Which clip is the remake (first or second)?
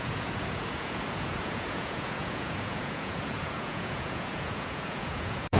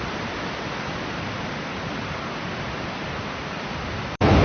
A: first